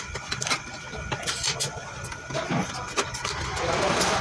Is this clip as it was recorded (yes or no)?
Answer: yes